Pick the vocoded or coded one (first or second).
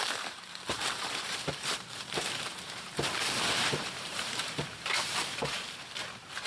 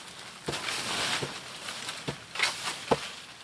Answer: first